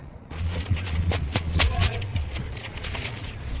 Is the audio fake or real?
fake